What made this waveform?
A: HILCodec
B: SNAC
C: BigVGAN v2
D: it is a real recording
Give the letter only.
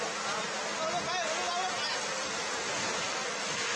D